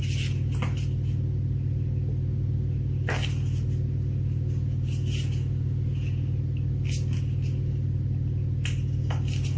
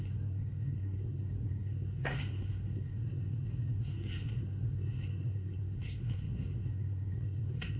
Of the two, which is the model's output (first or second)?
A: second